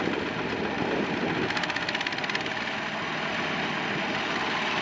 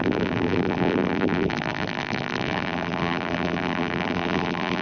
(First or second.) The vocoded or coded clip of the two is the second